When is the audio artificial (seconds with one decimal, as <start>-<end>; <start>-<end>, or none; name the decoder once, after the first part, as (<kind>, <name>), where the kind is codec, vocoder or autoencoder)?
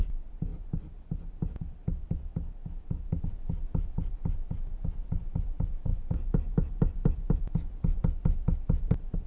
none